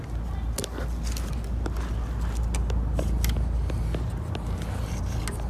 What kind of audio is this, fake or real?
real